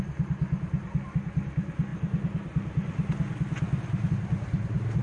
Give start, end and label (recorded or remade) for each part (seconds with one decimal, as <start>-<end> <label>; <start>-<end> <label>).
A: 0.0-5.0 recorded